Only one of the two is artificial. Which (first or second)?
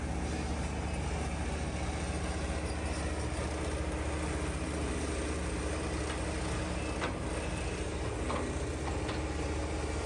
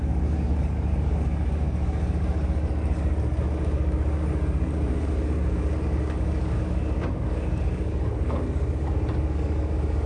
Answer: second